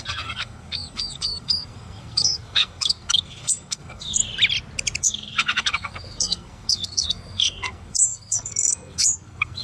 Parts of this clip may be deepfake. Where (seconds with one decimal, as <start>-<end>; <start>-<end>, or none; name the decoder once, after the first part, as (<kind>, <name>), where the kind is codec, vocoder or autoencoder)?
0.0-4.2 (codec, SNAC); 5.0-9.6